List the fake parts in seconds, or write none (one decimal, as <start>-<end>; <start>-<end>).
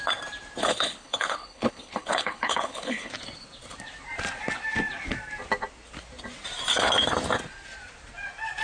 0.6-3.1